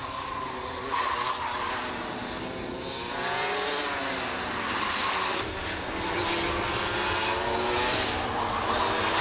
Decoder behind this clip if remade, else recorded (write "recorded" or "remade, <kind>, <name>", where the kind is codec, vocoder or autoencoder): recorded